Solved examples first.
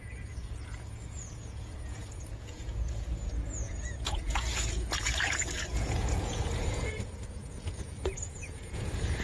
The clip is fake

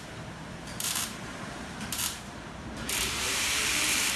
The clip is fake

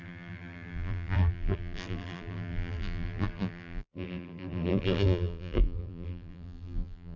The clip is fake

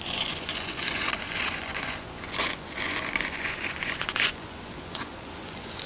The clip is fake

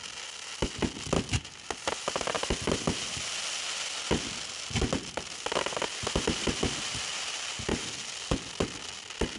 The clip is real